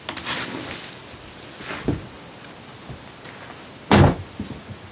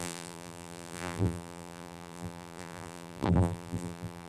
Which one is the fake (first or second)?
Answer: second